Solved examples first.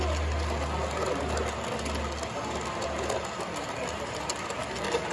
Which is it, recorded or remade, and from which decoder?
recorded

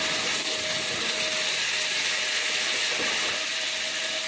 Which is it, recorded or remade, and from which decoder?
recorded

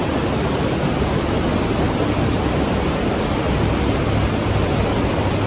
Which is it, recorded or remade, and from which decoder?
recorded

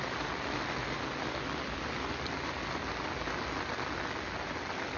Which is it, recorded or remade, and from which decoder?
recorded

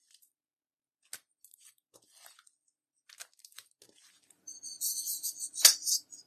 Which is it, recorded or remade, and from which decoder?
recorded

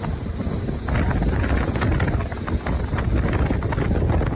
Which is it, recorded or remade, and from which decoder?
recorded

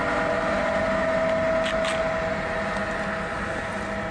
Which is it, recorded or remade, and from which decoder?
recorded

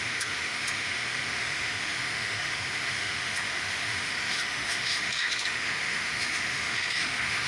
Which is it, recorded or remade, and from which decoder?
remade, autoencoder, DAC-VAE